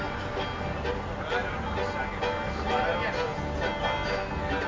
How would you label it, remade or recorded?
recorded